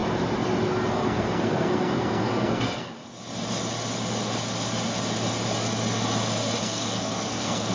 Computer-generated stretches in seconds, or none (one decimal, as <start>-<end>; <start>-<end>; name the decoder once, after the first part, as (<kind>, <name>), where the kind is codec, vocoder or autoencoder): 0.9-3.0 (codec, SNAC); 6.6-7.7